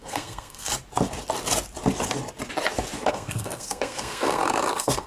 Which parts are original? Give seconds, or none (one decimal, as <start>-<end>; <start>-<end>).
0.7-3.1